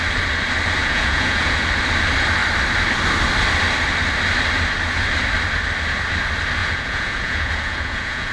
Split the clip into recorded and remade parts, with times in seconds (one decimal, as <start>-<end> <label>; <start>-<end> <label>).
0.0-0.8 recorded; 0.8-1.6 remade; 1.6-6.6 recorded; 6.6-8.3 remade